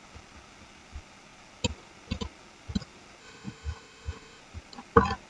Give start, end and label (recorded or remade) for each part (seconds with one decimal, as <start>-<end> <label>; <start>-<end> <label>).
0.0-3.2 recorded; 3.2-4.4 remade; 4.4-5.3 recorded